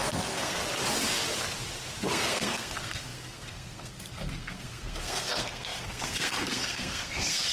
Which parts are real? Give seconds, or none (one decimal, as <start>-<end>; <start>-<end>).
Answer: 0.6-2.0